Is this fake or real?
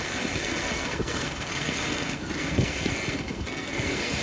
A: fake